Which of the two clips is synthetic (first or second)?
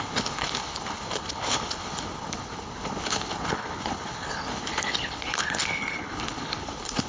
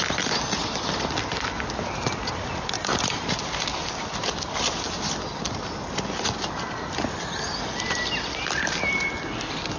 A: first